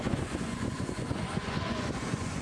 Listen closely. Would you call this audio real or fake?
fake